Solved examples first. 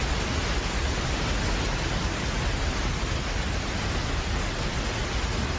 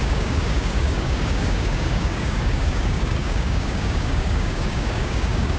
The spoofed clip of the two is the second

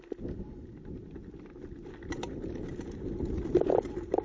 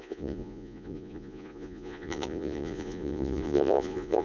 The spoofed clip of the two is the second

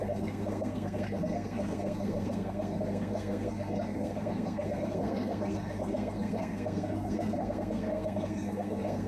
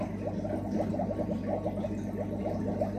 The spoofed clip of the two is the first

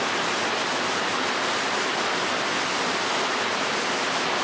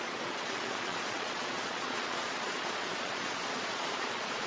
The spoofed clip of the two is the second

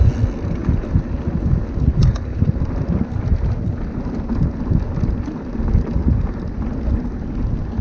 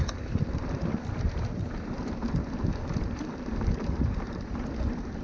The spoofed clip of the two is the second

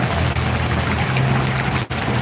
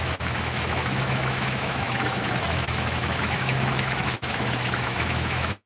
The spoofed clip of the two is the second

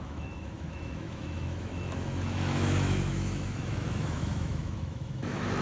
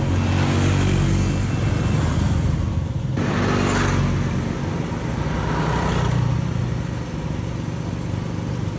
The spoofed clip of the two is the first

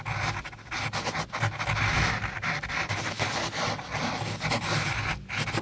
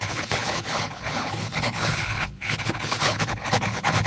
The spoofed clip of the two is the second